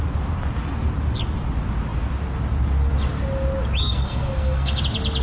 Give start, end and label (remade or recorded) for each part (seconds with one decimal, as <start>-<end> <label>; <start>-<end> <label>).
0.0-3.8 recorded; 3.8-4.8 remade; 4.8-5.2 recorded